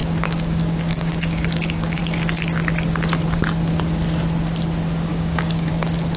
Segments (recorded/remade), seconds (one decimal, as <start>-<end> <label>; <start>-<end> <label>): 0.0-2.0 remade; 2.0-5.1 recorded; 5.1-5.7 remade; 5.7-6.2 recorded

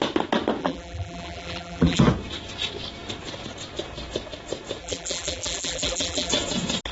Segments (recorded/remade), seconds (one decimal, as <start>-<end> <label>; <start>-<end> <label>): 0.0-0.6 recorded; 0.6-2.0 remade; 2.0-4.8 recorded; 4.8-6.3 remade; 6.3-6.9 recorded

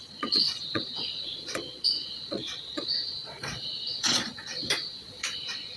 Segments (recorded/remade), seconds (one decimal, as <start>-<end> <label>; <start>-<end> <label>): 0.0-5.8 remade

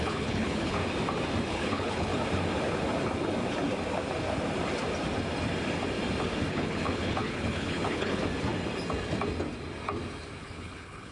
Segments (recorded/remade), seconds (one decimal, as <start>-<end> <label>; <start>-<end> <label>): 0.0-0.8 remade; 0.8-1.5 recorded; 1.5-2.1 remade; 2.1-6.5 recorded; 6.5-8.2 remade; 8.2-10.4 recorded; 10.4-11.1 remade

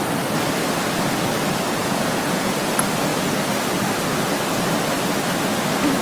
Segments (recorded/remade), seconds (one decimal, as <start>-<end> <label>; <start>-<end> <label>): 0.0-1.8 recorded; 1.8-2.7 remade; 2.7-6.0 recorded

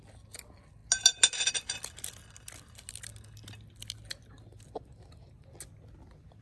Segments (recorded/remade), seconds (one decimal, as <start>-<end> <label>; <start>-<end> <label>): 0.0-6.4 recorded

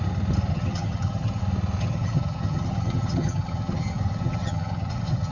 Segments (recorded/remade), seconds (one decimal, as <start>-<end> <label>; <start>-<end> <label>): 0.0-0.5 recorded; 0.5-1.4 remade; 1.4-1.8 recorded; 1.8-5.3 remade

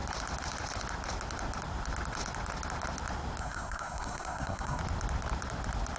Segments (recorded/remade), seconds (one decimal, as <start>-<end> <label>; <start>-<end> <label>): 0.0-3.4 recorded; 3.4-4.8 remade; 4.8-6.0 recorded